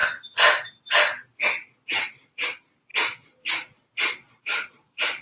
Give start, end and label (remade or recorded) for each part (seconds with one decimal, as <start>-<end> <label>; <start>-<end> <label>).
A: 0.0-2.0 recorded; 2.0-2.9 remade; 2.9-4.4 recorded; 4.4-5.2 remade